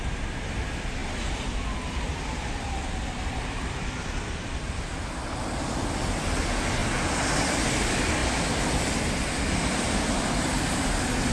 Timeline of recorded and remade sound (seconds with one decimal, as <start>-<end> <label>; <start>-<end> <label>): 0.0-2.1 recorded; 2.1-4.9 remade; 4.9-6.8 recorded; 6.8-7.6 remade; 7.6-8.2 recorded; 8.2-11.3 remade